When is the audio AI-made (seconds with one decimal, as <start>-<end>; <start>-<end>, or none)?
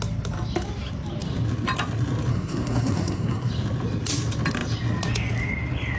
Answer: 2.3-3.5